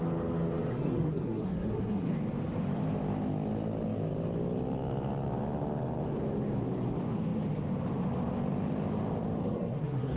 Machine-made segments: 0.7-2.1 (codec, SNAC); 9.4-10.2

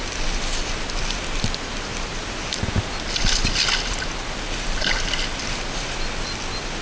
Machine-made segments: none